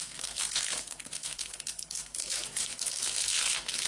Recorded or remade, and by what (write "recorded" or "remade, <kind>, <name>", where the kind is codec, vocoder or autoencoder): remade, codec, SNAC